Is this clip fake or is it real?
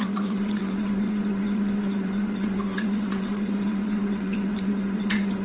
fake